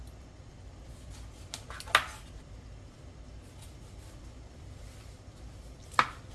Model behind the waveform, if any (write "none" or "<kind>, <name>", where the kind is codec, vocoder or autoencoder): none